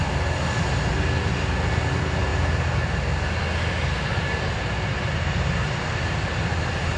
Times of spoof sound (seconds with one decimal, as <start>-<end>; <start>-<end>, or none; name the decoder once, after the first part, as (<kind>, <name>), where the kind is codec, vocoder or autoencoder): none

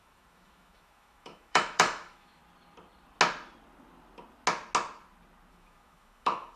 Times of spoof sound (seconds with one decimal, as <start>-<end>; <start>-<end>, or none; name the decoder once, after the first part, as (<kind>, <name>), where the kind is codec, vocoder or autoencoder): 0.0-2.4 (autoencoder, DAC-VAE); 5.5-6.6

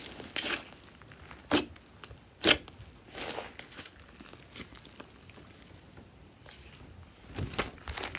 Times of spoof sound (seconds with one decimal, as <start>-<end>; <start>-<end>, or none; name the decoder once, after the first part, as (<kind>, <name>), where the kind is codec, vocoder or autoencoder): none

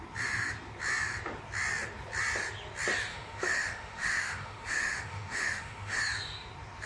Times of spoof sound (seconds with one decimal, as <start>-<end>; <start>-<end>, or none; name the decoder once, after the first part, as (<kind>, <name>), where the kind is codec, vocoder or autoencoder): 3.1-6.0 (autoencoder, DAC-VAE)

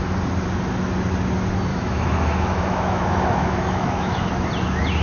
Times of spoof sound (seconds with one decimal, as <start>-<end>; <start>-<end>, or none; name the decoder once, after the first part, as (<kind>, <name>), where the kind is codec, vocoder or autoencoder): 1.7-4.3 (autoencoder, DAC-VAE)

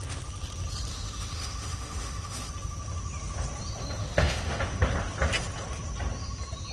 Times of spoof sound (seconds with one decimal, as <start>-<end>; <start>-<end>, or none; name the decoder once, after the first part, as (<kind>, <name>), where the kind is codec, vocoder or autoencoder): 0.9-2.5 (autoencoder, DAC-VAE); 4.0-4.6